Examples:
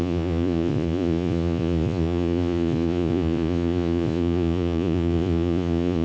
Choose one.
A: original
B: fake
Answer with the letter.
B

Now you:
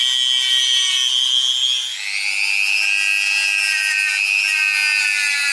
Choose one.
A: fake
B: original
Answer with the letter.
B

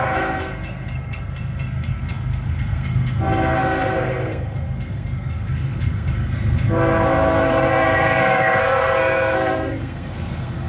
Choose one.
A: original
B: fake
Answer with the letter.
B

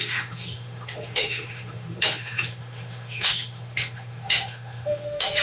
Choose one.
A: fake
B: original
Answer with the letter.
A